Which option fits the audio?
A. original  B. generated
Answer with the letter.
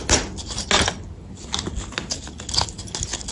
A